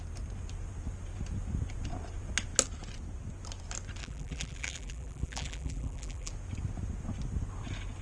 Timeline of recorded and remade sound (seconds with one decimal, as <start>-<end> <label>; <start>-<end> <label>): 0.0-4.0 recorded; 4.0-6.3 remade; 6.3-8.0 recorded